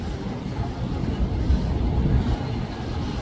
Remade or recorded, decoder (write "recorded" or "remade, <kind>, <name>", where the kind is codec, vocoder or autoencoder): recorded